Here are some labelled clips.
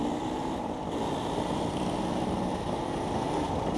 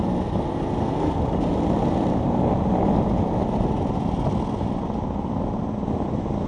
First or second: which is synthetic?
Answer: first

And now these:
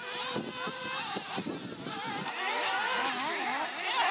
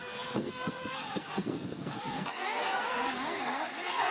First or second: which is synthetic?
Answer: second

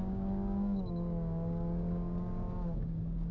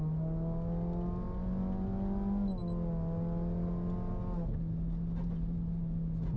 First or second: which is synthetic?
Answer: first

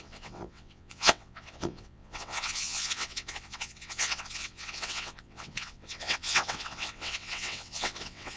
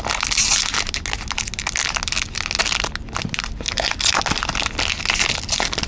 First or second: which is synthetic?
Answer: first